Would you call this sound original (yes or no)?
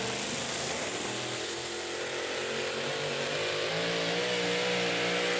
yes